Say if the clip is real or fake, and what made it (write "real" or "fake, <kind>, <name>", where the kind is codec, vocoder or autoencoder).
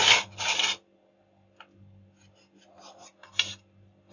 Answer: real